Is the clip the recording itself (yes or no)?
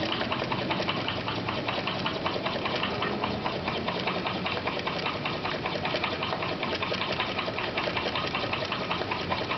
yes